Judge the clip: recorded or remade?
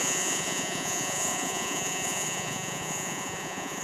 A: remade